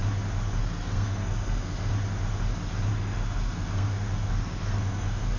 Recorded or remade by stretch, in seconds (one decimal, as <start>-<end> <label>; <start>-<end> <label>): 0.0-0.6 recorded; 0.6-1.9 remade; 1.9-2.9 recorded; 2.9-5.4 remade